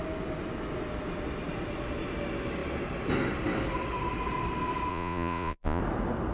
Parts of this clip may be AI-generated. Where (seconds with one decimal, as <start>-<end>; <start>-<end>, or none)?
4.9-5.8